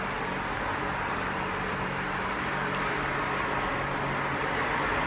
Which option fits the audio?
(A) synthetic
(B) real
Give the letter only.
B